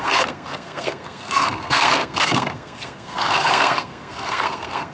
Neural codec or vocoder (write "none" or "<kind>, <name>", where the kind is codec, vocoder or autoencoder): codec, SNAC